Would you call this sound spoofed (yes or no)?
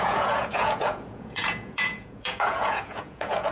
yes